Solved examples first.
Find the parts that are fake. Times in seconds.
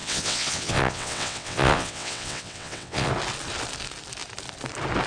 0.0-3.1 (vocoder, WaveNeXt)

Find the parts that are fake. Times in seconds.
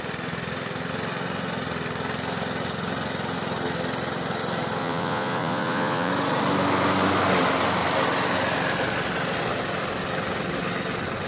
4.8-6.1 (vocoder, Vocos)